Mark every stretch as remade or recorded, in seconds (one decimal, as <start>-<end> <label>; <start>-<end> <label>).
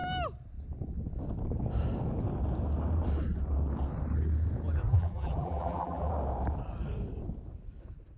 0.0-4.9 recorded; 4.9-6.1 remade; 6.1-8.2 recorded